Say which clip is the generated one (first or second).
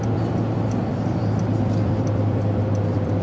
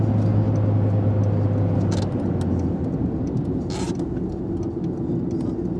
first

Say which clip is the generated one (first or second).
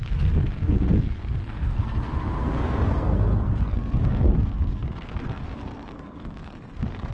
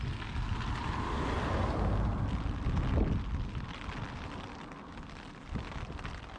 first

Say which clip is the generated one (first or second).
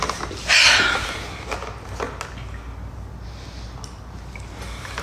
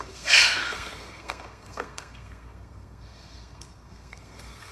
second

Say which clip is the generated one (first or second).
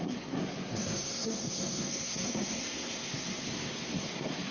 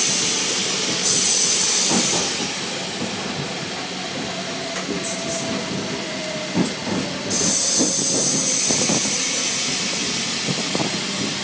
first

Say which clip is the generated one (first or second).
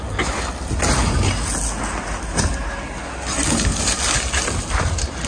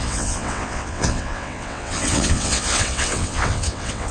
second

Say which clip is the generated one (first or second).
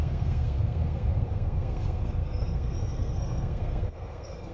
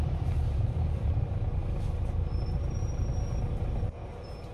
first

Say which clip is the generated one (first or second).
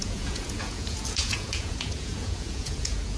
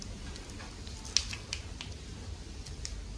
first